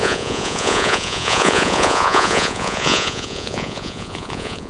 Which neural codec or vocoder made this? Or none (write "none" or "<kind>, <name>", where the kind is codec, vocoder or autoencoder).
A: vocoder, Vocos